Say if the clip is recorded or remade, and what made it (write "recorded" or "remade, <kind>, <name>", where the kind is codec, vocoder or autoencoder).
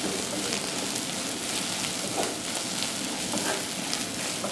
recorded